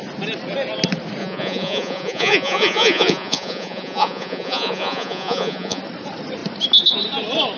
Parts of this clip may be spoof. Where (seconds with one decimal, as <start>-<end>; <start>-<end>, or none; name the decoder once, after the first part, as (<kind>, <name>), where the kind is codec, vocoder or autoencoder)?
1.2-5.8 (vocoder, Vocos)